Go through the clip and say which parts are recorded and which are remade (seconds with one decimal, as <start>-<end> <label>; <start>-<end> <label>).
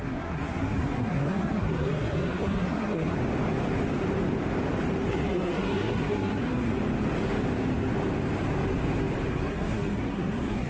0.0-3.2 remade; 3.2-5.1 recorded; 5.1-6.7 remade; 6.7-9.3 recorded; 9.3-10.7 remade